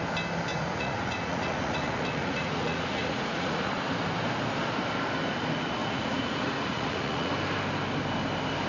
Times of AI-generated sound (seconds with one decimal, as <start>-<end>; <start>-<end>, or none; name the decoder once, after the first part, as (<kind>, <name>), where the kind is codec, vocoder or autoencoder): 0.5-3.8 (vocoder, Vocos); 5.8-7.3